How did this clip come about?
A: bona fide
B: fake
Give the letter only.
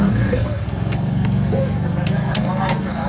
B